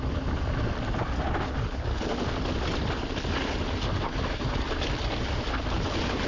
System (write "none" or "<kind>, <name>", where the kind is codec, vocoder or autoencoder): none